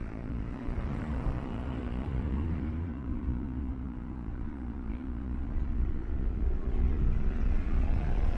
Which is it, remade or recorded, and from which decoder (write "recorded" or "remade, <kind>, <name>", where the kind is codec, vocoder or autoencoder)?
remade, vocoder, Vocos